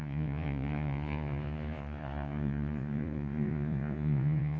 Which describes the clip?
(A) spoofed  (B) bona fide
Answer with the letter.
A